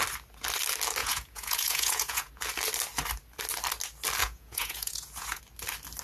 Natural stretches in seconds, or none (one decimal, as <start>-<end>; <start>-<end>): 0.0-1.0; 2.3-4.2; 5.4-6.0